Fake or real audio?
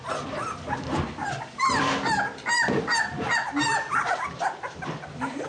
fake